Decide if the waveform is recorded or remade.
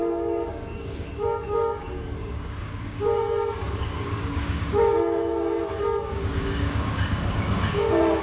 remade